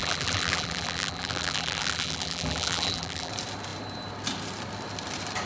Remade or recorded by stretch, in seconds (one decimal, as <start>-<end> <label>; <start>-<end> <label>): 0.0-3.3 remade; 3.3-5.5 recorded